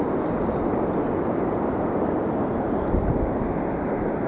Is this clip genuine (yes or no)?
yes